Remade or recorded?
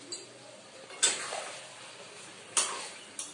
recorded